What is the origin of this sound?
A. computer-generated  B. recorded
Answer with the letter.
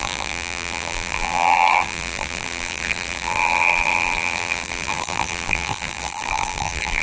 A